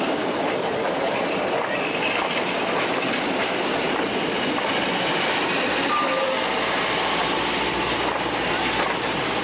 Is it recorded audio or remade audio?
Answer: recorded